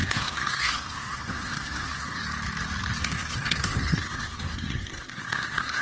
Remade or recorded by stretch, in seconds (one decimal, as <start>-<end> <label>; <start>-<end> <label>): 0.0-2.2 remade; 2.2-3.0 recorded; 3.0-5.8 remade